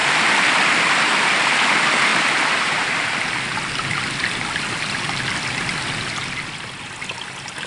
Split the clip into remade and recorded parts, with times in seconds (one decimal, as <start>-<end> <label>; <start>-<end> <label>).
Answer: 0.0-2.1 recorded; 2.1-3.1 remade; 3.1-7.7 recorded